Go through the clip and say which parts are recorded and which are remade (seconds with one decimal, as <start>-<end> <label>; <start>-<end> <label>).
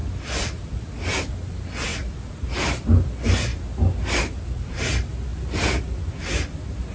0.0-1.2 remade; 1.2-1.9 recorded; 1.9-2.5 remade; 2.5-6.9 recorded